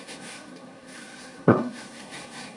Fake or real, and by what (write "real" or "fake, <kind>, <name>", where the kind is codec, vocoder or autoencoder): fake, codec, SNAC